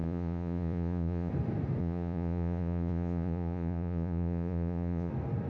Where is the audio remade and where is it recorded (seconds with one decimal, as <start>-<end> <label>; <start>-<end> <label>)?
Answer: 0.0-1.3 remade; 1.3-1.8 recorded; 1.8-5.1 remade; 5.1-5.5 recorded